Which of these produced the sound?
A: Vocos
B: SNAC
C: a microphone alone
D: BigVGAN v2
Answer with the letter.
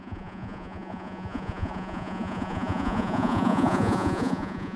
A